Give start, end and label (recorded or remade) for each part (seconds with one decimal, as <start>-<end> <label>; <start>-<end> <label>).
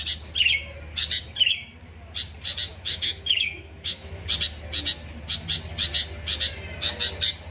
0.0-2.7 recorded; 2.7-4.2 remade; 4.2-7.5 recorded